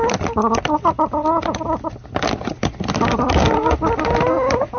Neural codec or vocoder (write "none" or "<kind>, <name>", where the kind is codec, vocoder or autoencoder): none